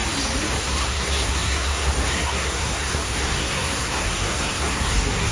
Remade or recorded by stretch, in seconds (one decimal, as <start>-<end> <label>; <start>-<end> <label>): 0.0-0.6 recorded; 0.6-5.3 remade